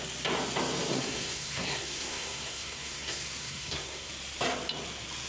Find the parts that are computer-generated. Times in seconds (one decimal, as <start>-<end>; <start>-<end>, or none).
0.9-4.1